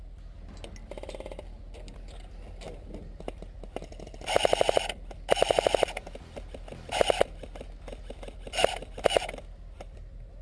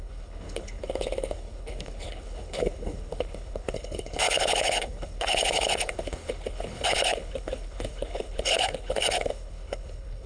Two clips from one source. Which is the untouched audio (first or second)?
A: first